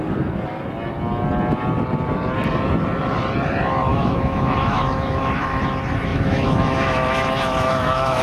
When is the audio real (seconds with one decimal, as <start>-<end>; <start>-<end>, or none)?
0.0-3.9; 5.6-6.1